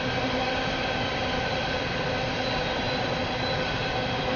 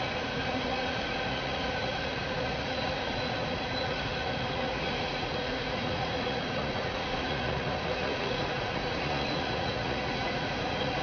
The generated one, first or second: second